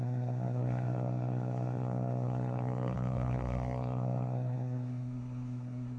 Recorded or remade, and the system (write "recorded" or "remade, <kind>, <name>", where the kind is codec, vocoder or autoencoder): remade, codec, SNAC